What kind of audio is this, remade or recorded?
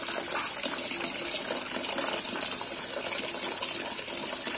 recorded